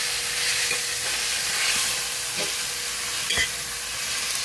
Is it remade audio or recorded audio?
recorded